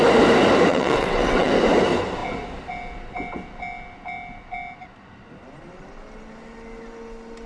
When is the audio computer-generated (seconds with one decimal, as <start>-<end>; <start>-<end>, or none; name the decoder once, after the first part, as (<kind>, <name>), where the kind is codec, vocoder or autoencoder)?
0.7-1.5 (vocoder, WaveNeXt)